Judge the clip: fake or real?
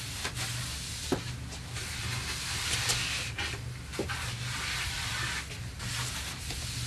real